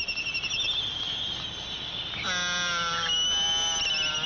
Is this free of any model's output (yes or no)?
yes